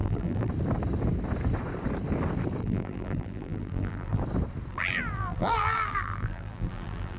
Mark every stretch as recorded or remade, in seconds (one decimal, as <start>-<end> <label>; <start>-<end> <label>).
0.0-0.5 remade; 0.5-2.6 recorded; 2.6-4.2 remade; 4.2-4.7 recorded; 4.7-7.2 remade